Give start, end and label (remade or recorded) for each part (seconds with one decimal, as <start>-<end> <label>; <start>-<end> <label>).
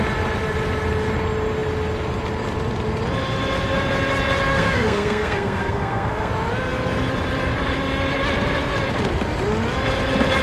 0.0-4.5 recorded; 4.5-6.3 remade; 6.3-10.4 recorded